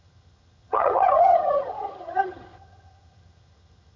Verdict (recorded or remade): remade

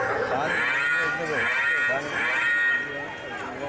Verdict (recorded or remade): recorded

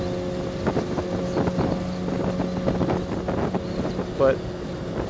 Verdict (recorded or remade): recorded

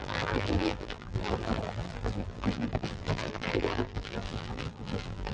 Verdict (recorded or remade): remade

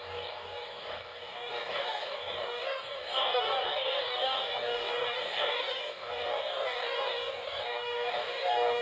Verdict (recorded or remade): remade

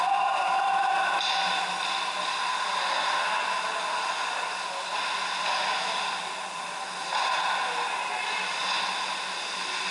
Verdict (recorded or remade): recorded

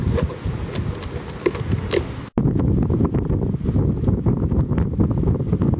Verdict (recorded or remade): recorded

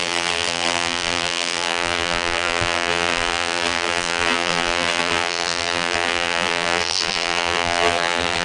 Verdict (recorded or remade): remade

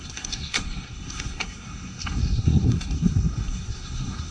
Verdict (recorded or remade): remade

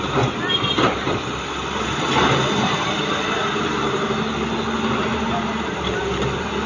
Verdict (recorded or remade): remade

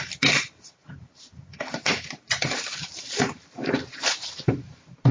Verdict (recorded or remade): remade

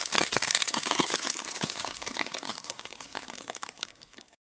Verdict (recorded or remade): remade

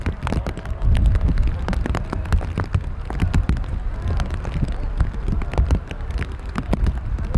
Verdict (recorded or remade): recorded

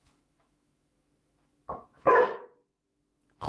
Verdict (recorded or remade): remade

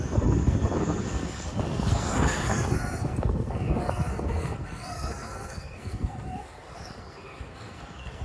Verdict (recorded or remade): remade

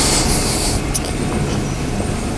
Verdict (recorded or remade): recorded